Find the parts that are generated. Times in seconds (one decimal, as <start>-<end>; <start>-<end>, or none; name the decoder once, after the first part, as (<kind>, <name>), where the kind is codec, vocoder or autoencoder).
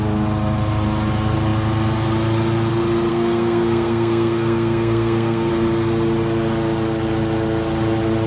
3.1-5.5 (codec, SNAC)